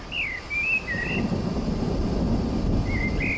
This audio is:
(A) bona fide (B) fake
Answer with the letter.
A